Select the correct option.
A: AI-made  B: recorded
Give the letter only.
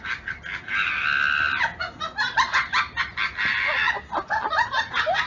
B